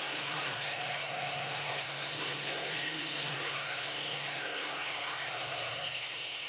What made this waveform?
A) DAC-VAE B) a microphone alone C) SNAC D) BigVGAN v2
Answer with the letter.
C